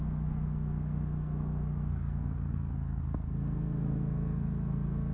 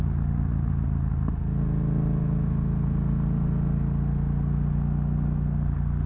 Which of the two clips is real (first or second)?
second